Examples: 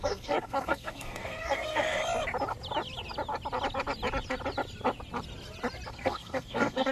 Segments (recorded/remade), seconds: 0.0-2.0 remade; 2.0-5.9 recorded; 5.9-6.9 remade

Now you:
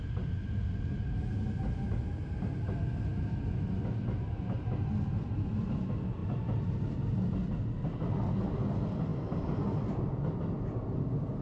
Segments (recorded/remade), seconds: 0.0-9.1 recorded; 9.1-10.0 remade; 10.0-11.4 recorded

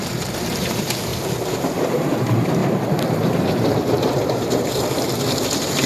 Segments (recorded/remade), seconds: 0.0-1.1 remade; 1.1-1.6 recorded; 1.6-5.9 remade

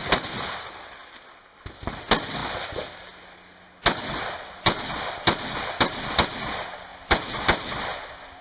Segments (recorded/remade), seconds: 0.0-8.4 recorded

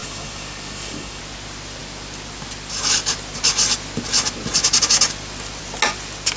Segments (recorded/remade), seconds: 0.0-1.2 remade; 1.2-6.4 recorded

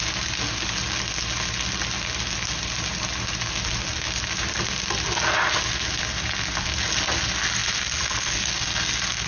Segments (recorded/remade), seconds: 0.0-9.3 recorded